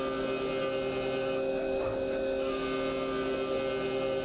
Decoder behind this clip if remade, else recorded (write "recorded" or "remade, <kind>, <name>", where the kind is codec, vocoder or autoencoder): recorded